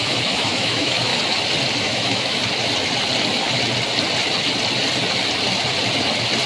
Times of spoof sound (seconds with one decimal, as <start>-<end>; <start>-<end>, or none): 0.0-1.1; 1.8-2.4